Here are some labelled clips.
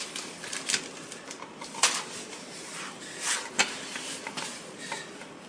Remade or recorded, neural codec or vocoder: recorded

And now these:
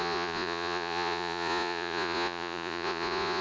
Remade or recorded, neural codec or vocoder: remade, vocoder, Vocos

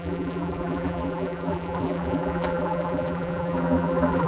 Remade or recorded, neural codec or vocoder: remade, vocoder, BigVGAN v2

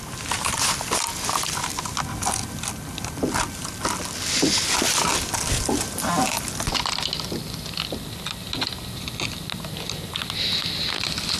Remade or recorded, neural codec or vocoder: recorded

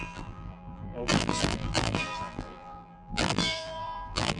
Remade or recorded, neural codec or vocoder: remade, vocoder, BigVGAN v2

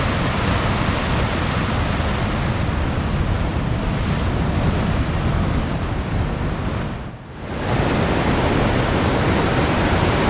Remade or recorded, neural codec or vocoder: recorded